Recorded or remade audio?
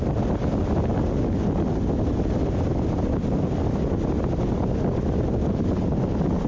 recorded